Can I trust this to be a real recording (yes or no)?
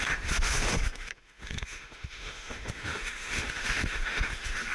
no